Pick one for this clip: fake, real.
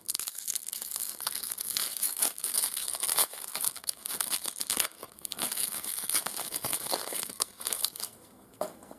fake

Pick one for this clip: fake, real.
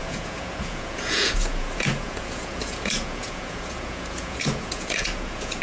fake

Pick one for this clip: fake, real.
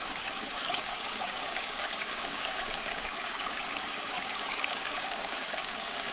fake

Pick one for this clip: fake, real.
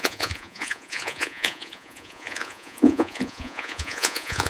fake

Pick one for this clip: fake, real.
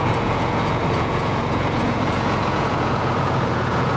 fake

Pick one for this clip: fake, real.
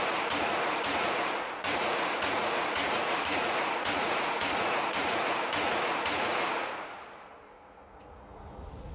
fake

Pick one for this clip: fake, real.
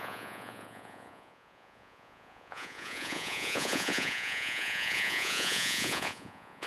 fake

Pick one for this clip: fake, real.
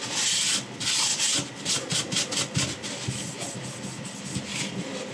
real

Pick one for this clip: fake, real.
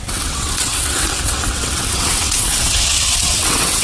fake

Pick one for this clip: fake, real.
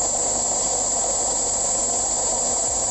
real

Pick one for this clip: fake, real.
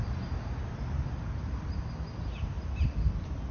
real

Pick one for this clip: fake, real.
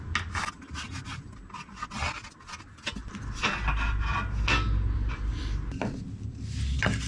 real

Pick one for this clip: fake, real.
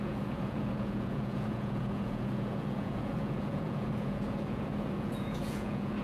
fake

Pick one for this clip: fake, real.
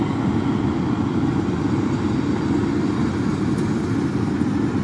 real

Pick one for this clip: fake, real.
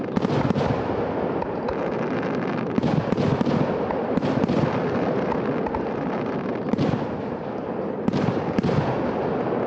real